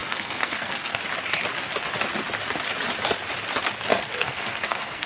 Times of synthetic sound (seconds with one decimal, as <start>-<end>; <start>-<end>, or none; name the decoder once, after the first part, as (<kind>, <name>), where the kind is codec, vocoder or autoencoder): 0.0-1.0 (codec, SNAC); 3.9-5.1